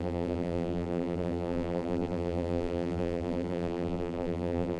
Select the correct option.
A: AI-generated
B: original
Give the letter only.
A